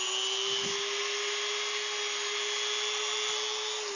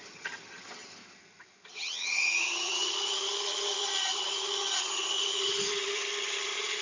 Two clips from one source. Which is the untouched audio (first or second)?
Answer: first